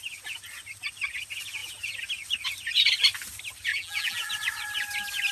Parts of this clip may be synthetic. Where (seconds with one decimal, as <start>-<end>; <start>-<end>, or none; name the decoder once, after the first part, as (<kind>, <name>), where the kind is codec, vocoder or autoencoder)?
3.7-4.3 (vocoder, BigVGAN v2)